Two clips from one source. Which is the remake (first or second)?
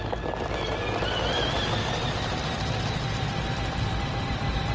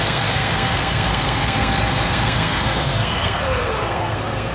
second